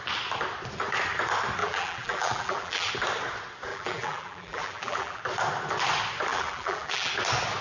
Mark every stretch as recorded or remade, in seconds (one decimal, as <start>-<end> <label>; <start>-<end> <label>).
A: 0.0-1.6 recorded; 1.6-2.9 remade; 2.9-3.7 recorded; 3.7-5.2 remade; 5.2-6.3 recorded; 6.3-7.1 remade; 7.1-7.6 recorded